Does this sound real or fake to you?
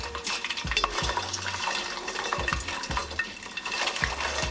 fake